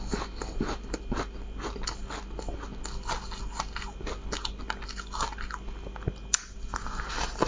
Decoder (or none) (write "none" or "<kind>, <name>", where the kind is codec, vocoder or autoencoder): none